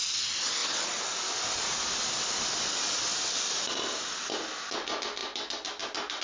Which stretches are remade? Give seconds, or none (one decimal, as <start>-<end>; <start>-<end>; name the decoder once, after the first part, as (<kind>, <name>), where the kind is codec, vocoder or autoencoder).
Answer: none